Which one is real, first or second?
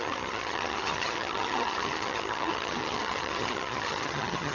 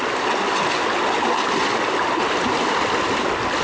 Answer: second